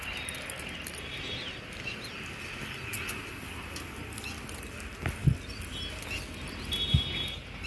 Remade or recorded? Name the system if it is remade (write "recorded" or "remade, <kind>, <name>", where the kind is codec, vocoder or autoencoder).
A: recorded